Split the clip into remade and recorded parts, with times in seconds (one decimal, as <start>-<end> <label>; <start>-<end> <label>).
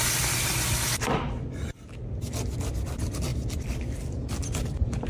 0.0-3.3 recorded; 3.3-4.0 remade; 4.0-5.1 recorded